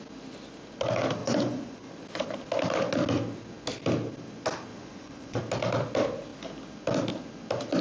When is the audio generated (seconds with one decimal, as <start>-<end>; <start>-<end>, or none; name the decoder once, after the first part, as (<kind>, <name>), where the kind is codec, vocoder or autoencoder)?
1.2-1.9 (vocoder, Vocos); 4.7-5.4